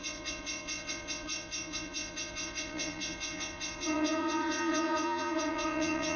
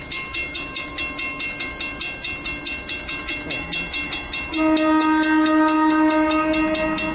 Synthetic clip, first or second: first